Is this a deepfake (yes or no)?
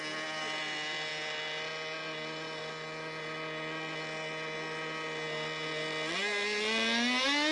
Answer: no